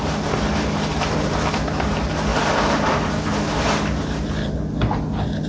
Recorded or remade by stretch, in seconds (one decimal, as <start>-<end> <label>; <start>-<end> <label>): 0.0-5.5 recorded